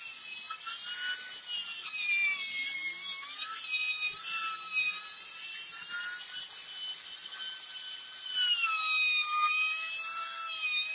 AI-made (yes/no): no